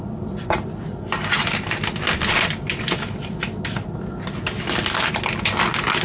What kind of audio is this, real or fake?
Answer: real